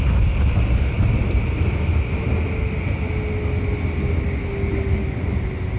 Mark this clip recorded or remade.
recorded